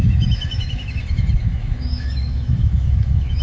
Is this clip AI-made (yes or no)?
yes